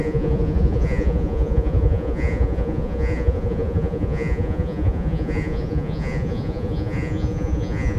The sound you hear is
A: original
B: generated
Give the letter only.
B